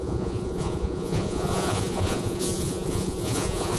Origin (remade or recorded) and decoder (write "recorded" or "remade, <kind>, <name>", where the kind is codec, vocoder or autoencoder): remade, vocoder, Vocos